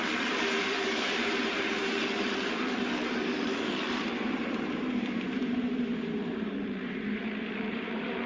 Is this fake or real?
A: fake